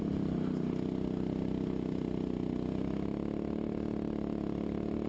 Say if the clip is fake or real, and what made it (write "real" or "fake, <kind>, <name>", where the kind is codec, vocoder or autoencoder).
real